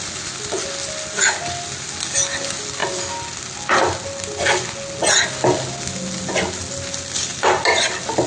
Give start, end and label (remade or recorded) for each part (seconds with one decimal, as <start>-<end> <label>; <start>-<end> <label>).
0.0-8.3 recorded